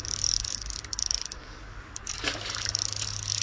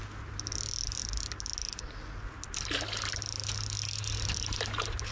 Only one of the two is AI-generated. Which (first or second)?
first